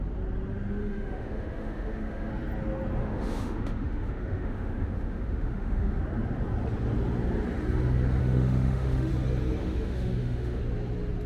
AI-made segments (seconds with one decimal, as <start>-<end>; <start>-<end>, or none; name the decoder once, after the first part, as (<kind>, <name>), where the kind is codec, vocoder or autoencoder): 0.8-2.3 (autoencoder, DAC-VAE); 3.0-6.0; 8.2-9.1; 9.6-10.6